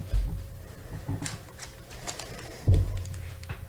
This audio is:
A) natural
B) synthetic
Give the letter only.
B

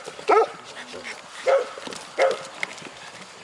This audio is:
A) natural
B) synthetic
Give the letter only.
A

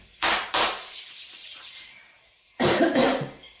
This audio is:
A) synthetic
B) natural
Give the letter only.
A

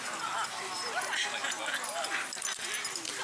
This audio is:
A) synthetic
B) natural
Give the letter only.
A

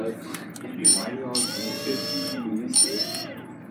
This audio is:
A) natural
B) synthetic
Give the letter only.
A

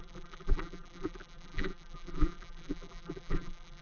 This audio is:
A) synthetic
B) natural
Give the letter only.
A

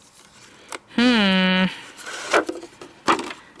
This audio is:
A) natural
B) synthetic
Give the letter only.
A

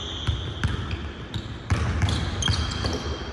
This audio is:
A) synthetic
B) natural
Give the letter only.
A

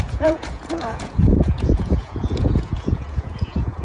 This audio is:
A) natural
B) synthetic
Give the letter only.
B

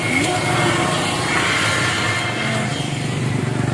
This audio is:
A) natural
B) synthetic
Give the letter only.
A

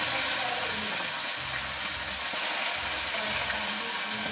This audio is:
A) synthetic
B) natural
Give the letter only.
B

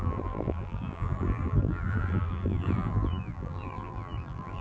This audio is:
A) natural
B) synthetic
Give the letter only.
B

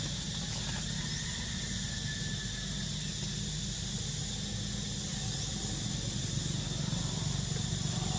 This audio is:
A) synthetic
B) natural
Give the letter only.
B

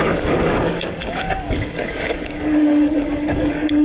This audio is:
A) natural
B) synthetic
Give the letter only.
B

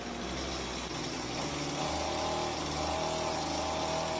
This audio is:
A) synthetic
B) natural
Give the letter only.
B